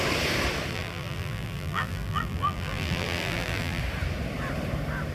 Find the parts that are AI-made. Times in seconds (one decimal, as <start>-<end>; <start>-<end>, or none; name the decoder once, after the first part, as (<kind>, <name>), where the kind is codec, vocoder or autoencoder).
0.7-3.8 (vocoder, BigVGAN v2)